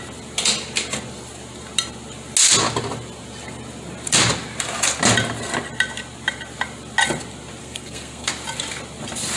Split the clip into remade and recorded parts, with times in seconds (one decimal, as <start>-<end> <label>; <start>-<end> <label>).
0.0-7.6 recorded; 7.6-8.3 remade; 8.3-9.4 recorded